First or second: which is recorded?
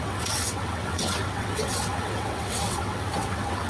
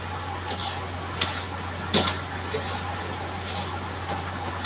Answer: second